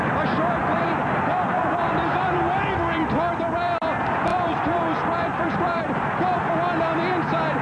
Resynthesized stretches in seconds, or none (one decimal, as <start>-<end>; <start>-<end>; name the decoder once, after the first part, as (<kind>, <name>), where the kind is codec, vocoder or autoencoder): 0.6-2.3 (vocoder, BigVGAN v2); 4.3-6.5